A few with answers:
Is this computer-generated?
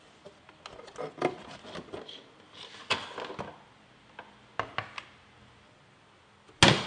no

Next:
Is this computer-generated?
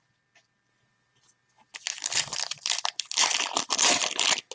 no